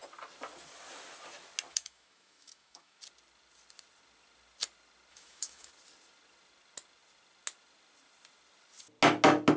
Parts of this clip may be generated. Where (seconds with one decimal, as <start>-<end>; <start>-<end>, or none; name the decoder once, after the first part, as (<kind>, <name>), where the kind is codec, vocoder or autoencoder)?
1.7-3.0 (autoencoder, DAC-VAE); 5.1-5.7